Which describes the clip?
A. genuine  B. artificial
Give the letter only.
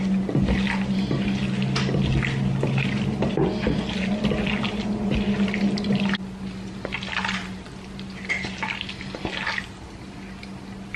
A